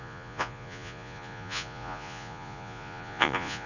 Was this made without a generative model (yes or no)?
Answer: no